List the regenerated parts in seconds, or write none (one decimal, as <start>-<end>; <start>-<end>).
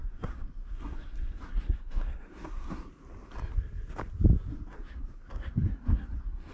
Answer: 0.0-2.9; 4.5-6.5